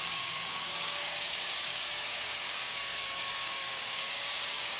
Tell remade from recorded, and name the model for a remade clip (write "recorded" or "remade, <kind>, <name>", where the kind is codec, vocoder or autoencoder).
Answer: remade, codec, DAC